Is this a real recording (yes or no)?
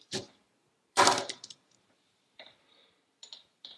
no